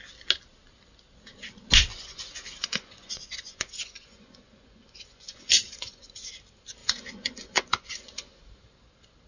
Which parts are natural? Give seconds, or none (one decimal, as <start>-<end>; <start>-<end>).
0.0-1.9; 6.3-6.8; 8.4-9.3